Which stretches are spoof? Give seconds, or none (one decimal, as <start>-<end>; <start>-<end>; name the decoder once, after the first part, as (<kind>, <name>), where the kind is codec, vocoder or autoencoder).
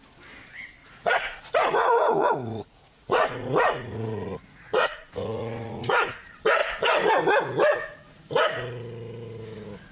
0.8-6.1 (vocoder, Vocos); 6.6-7.1; 7.7-8.4